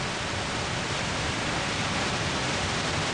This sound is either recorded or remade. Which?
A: recorded